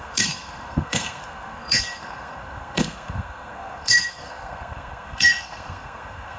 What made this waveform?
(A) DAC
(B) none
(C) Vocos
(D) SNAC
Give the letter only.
D